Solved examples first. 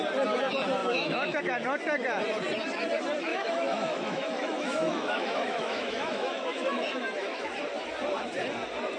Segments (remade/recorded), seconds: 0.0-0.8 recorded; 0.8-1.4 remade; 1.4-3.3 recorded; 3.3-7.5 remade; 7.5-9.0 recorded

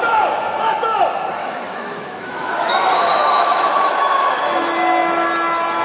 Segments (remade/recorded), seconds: 0.0-1.4 recorded; 1.4-2.7 remade; 2.7-3.2 recorded; 3.2-4.3 remade; 4.3-5.8 recorded

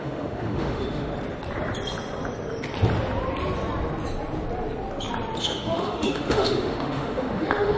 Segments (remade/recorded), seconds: 0.0-1.1 remade; 1.1-5.4 recorded; 5.4-7.8 remade